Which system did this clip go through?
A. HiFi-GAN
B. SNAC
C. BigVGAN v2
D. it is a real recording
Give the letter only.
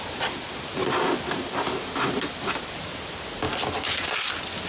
D